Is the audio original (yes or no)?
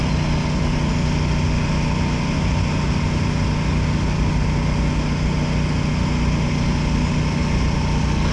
yes